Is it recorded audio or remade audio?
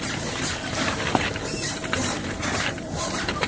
remade